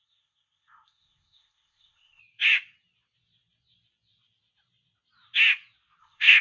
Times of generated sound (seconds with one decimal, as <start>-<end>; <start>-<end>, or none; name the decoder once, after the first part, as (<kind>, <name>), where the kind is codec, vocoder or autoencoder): 0.0-2.2 (codec, ZipCodec); 6.0-6.4